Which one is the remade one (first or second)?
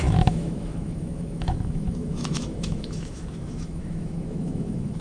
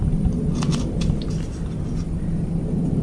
first